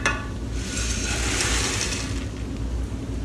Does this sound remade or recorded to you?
recorded